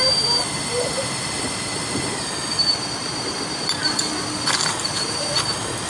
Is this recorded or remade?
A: recorded